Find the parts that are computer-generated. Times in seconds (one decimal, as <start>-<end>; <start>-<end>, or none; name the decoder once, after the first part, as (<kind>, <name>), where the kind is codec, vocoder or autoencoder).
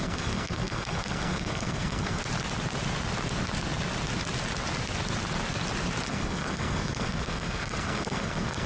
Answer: 0.0-2.2 (codec, SNAC); 6.1-8.7